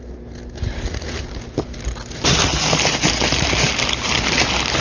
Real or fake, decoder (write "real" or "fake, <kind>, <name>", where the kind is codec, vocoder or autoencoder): real